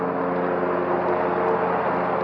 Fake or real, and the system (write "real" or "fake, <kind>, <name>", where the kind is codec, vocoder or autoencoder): real